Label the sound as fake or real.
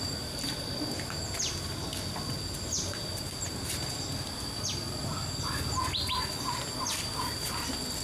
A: real